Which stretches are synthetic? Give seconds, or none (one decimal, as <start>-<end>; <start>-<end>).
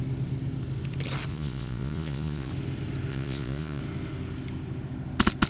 1.3-2.5; 3.1-3.8